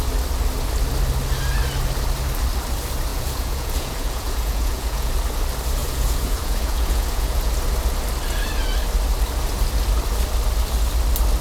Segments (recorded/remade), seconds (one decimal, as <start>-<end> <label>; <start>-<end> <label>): 0.0-3.1 recorded; 3.1-5.1 remade; 5.1-5.8 recorded; 5.8-7.5 remade; 7.5-11.4 recorded